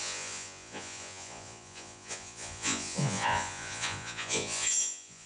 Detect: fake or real fake